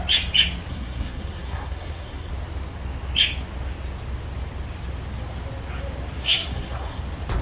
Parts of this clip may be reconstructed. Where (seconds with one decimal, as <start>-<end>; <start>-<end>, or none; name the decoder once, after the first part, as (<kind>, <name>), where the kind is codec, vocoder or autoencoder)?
0.7-2.3 (codec, SNAC); 6.2-7.0